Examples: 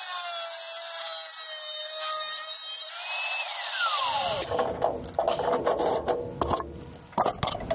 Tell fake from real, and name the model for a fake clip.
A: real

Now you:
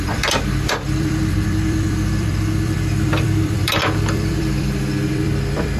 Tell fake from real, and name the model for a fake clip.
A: fake, vocoder, BigVGAN v2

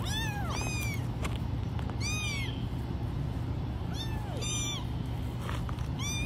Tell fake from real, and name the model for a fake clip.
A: real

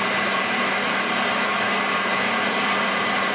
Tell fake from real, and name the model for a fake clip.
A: fake, vocoder, BigVGAN v2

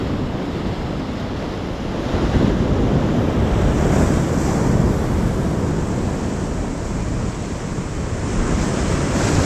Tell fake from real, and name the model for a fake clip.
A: real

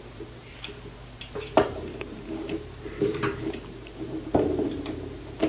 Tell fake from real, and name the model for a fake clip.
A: fake, vocoder, BigVGAN v2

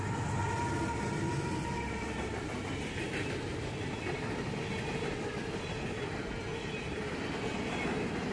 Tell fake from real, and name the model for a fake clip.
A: real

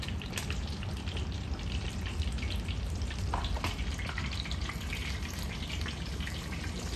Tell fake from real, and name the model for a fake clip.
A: real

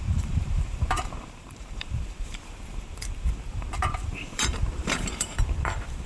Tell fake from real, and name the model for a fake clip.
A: fake, vocoder, BigVGAN v2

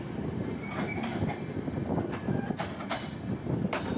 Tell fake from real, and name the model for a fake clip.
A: real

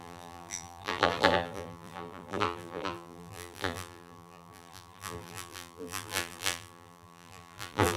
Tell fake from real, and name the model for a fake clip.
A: fake, vocoder, BigVGAN v2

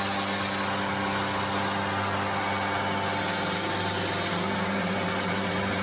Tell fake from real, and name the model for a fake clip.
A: real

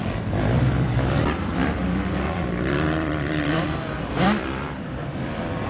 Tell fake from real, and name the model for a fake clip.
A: fake, vocoder, BigVGAN v2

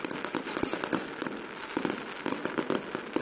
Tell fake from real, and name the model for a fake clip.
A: real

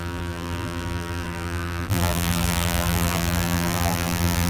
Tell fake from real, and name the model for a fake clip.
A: fake, vocoder, BigVGAN v2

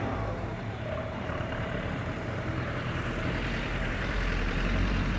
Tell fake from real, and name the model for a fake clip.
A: fake, vocoder, BigVGAN v2